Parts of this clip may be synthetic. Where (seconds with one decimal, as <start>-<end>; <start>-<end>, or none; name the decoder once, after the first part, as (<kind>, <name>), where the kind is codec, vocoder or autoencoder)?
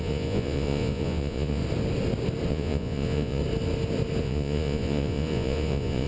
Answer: 0.0-1.6 (vocoder, Vocos); 2.5-3.4; 4.2-6.1